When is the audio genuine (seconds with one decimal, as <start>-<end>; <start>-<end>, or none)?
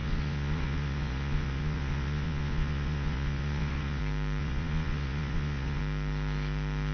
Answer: 4.0-4.4; 5.8-6.9